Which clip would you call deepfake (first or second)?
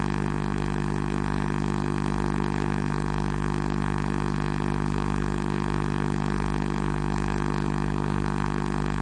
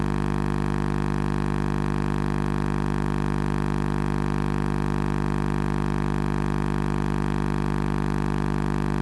first